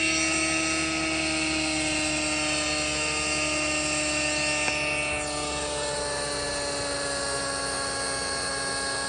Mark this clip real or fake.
real